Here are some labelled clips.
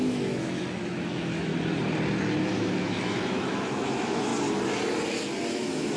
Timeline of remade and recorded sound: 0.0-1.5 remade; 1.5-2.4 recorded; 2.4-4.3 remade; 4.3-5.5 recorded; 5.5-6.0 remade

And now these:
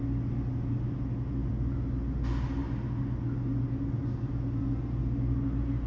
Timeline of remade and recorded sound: 0.0-5.9 recorded

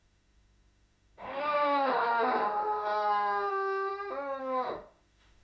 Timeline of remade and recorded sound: 0.0-2.1 remade; 2.1-3.5 recorded; 3.5-3.9 remade; 3.9-4.4 recorded; 4.4-5.4 remade

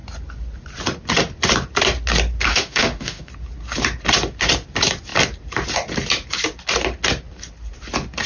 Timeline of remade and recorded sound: 0.0-2.5 recorded; 2.5-3.3 remade; 3.3-8.3 recorded

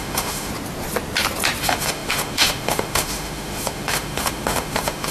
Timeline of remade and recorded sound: 0.0-0.5 remade; 0.5-1.6 recorded; 1.6-5.1 remade